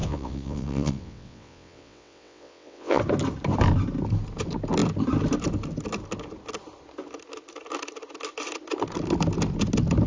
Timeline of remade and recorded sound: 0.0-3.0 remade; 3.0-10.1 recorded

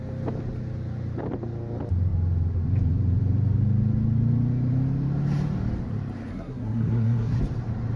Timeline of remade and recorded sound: 0.0-6.3 recorded; 6.3-7.4 remade; 7.4-8.0 recorded

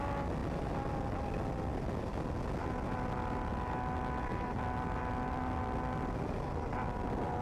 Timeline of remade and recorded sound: 0.0-7.4 recorded

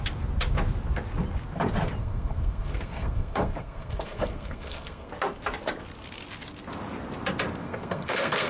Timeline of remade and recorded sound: 0.0-2.0 recorded; 2.0-5.1 remade; 5.1-7.6 recorded; 7.6-8.5 remade

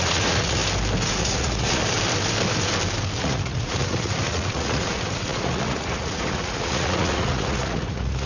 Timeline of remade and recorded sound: 0.0-0.6 remade; 0.6-1.2 recorded; 1.2-1.8 remade; 1.8-3.2 recorded; 3.2-8.3 remade

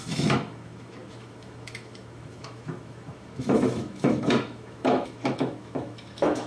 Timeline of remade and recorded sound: 0.0-6.5 remade

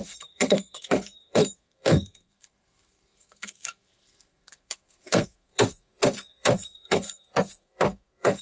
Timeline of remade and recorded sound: 0.0-8.4 remade